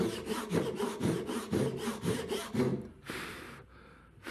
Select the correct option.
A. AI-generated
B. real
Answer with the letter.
A